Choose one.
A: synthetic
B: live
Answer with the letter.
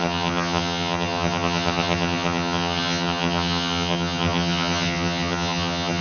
A